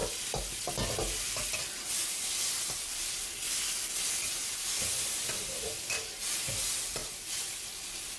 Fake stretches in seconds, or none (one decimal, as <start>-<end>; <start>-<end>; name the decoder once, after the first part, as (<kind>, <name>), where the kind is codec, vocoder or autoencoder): 4.4-6.2 (vocoder, BigVGAN v2); 7.0-7.6